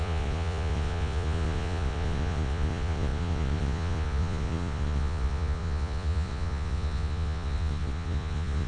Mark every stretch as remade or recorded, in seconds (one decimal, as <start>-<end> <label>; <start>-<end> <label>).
0.0-8.7 remade